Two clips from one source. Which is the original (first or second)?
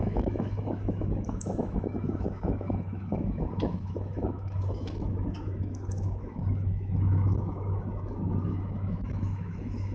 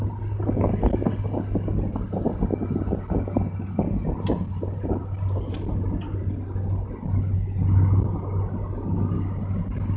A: second